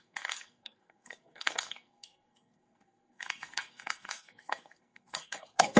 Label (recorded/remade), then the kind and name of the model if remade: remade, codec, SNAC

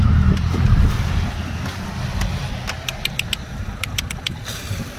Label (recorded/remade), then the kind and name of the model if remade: recorded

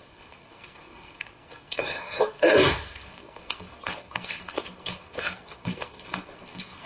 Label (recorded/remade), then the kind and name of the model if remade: remade, codec, SNAC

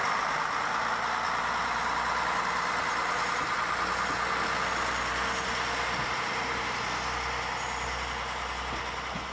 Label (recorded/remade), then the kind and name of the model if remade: recorded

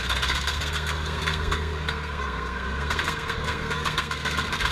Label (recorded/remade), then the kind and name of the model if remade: remade, codec, SNAC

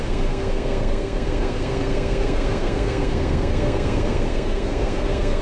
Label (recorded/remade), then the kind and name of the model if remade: remade, codec, SNAC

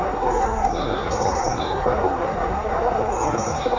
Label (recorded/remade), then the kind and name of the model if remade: remade, codec, SNAC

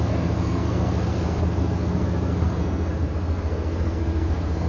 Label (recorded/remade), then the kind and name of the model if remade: remade, codec, SNAC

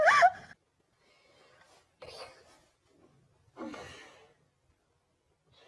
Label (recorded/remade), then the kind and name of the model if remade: recorded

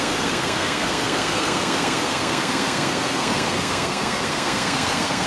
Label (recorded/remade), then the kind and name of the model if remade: remade, codec, SNAC